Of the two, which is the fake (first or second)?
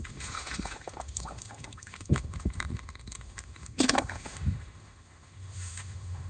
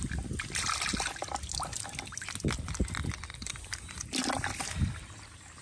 first